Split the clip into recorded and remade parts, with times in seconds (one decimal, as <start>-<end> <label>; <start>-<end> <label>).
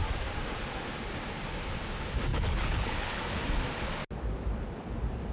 0.0-2.3 recorded; 2.3-3.2 remade; 3.2-5.3 recorded